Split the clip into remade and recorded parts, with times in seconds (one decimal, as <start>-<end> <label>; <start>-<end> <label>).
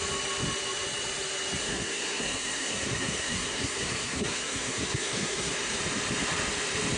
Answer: 0.0-1.6 recorded; 1.6-5.8 remade; 5.8-7.0 recorded